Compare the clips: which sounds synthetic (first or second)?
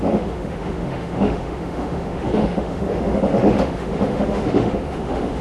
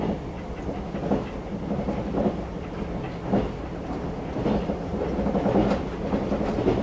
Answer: first